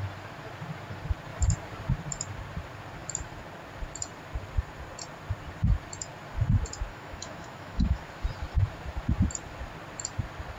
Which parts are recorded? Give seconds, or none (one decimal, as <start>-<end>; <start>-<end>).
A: 0.0-6.9; 8.0-10.6